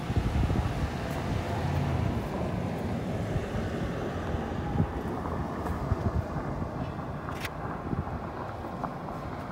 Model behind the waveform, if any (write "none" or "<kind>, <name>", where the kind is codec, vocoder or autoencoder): none